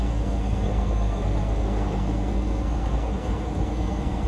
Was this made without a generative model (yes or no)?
no